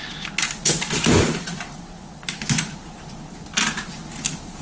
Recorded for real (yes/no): yes